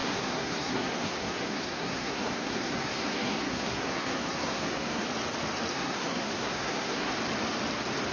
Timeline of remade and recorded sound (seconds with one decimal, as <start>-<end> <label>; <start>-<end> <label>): 0.0-5.0 remade; 5.0-5.7 recorded; 5.7-7.1 remade; 7.1-8.1 recorded